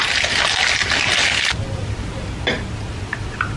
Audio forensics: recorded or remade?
recorded